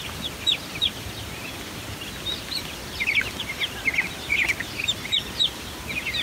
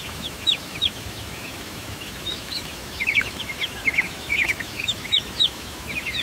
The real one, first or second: first